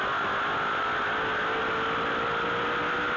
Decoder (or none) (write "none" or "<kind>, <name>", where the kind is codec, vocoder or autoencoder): none